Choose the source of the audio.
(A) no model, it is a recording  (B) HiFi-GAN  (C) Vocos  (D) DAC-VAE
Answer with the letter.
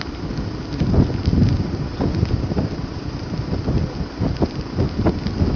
A